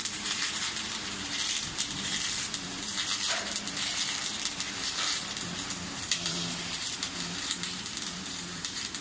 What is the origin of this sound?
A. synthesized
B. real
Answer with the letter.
A